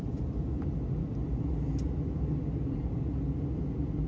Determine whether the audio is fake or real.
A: real